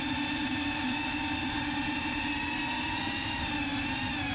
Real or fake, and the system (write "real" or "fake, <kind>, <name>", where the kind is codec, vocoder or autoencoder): fake, vocoder, BigVGAN v2